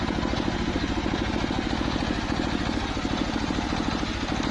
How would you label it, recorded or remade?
recorded